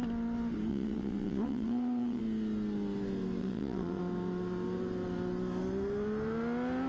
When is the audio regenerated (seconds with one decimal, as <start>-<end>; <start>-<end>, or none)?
0.7-2.2; 3.4-4.0